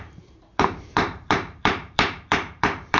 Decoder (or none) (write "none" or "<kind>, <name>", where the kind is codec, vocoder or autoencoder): vocoder, BigVGAN v2